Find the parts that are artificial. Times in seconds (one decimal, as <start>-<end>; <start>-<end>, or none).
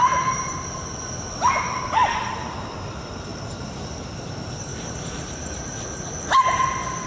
3.3-4.0; 4.7-5.3